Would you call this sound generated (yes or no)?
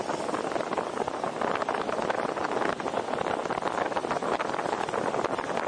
no